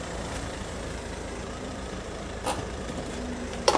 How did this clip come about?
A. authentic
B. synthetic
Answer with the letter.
B